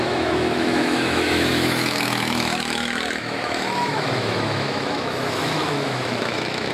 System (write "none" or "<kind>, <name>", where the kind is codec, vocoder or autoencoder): autoencoder, DAC-VAE